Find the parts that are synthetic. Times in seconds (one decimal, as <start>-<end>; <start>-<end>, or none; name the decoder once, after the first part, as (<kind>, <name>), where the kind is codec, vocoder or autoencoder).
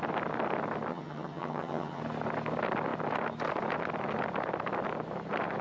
0.9-2.0 (vocoder, HiFi-GAN)